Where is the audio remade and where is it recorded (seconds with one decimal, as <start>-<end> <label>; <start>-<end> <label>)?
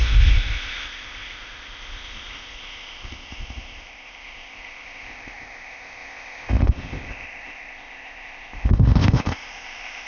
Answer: 0.0-10.1 remade